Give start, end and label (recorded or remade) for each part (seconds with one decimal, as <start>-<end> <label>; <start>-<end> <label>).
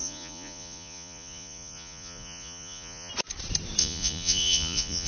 0.0-3.1 remade; 3.1-3.8 recorded; 3.8-5.1 remade